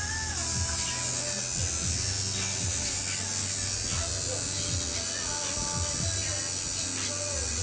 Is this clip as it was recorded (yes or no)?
yes